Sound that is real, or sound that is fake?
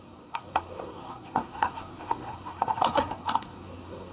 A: fake